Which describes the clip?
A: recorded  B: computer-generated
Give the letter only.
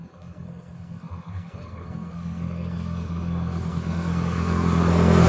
B